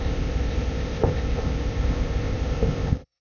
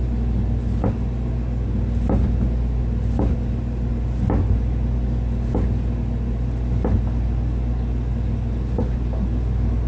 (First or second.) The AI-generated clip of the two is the first